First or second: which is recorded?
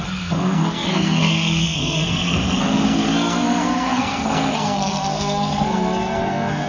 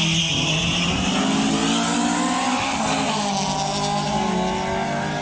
second